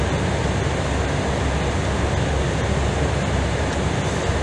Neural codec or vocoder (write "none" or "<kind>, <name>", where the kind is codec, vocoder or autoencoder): none